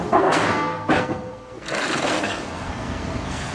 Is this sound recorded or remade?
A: remade